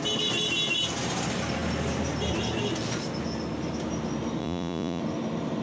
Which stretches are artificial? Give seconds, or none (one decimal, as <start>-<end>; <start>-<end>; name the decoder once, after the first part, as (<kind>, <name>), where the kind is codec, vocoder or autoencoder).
4.4-5.0 (vocoder, Vocos)